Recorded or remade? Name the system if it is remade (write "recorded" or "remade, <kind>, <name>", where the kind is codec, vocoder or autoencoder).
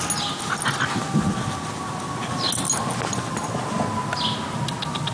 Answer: recorded